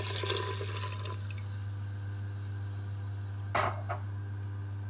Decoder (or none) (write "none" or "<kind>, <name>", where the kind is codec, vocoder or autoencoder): none